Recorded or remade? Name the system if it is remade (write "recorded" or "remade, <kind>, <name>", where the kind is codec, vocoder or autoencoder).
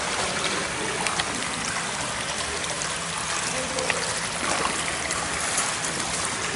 recorded